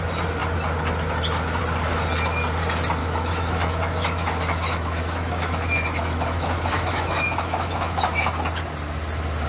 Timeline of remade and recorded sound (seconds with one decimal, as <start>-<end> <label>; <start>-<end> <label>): 0.0-3.0 recorded; 3.0-8.3 remade; 8.3-9.5 recorded